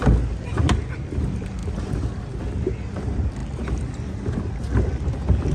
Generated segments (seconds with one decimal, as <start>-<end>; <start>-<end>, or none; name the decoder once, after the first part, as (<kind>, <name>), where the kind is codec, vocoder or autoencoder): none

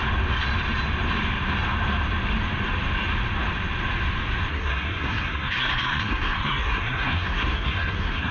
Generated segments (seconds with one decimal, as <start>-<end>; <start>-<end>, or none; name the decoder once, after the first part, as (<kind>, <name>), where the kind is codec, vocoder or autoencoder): 4.5-8.3 (codec, SNAC)

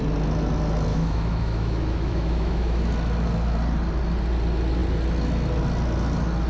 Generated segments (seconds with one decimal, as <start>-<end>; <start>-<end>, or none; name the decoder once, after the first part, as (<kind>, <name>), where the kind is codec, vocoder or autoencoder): 0.9-2.8 (autoencoder, DAC-VAE)